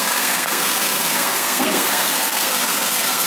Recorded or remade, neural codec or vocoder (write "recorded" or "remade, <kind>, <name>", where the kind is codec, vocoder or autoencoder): remade, codec, SNAC